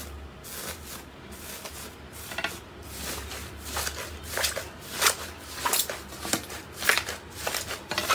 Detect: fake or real real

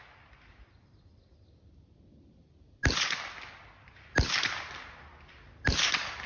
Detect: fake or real real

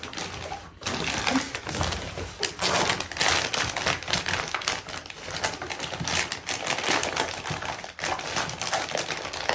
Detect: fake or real real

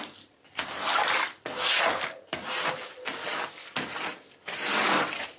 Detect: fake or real real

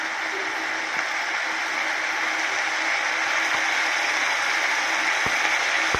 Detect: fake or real real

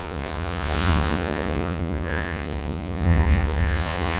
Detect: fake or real fake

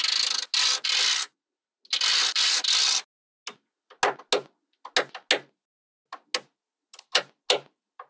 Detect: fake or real real